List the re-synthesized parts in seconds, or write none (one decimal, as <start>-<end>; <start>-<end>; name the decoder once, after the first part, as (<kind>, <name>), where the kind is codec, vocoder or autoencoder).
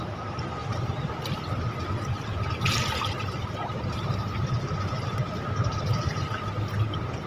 0.6-1.5 (vocoder, BigVGAN v2)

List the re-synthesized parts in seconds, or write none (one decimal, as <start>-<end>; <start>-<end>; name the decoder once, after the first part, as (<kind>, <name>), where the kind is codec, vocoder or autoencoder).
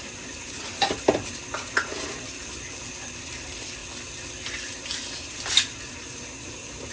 0.0-1.4 (vocoder, BigVGAN v2); 2.1-3.8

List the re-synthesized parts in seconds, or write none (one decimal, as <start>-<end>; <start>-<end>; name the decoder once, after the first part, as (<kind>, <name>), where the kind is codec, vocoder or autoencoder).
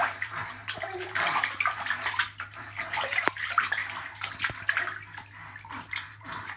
0.0-3.8 (vocoder, BigVGAN v2); 5.7-6.6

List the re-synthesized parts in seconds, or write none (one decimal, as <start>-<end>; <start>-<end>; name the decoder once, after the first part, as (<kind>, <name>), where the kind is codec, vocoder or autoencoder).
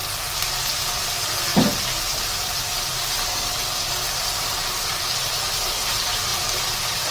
6.3-7.1 (vocoder, BigVGAN v2)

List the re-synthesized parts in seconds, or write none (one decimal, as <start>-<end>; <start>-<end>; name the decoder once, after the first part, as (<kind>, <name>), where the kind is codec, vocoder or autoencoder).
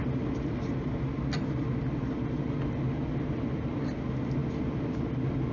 none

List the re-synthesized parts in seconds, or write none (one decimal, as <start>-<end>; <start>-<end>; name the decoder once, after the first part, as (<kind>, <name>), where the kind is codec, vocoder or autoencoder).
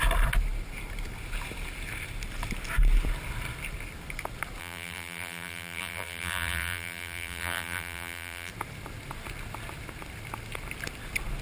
4.6-8.5 (vocoder, BigVGAN v2)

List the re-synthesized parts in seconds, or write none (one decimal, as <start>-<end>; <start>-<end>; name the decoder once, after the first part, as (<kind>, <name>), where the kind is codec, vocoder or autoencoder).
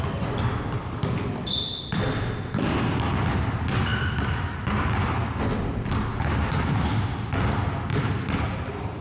7.9-8.4 (vocoder, BigVGAN v2)